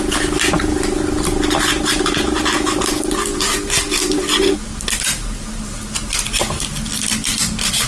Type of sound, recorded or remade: recorded